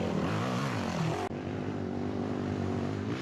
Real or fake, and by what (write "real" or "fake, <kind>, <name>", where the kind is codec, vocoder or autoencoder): real